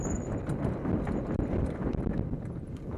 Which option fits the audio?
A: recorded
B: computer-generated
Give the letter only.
A